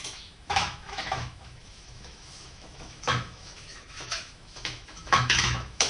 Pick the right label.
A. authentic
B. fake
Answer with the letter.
B